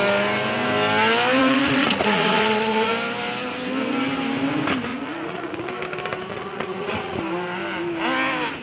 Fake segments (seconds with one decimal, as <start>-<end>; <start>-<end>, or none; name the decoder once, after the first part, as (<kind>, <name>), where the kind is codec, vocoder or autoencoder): 1.4-2.9 (vocoder, Vocos); 4.9-5.7; 6.3-7.2